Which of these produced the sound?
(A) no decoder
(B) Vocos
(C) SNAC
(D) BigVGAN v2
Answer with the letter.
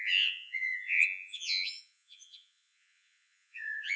B